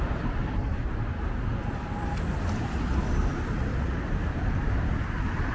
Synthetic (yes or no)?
no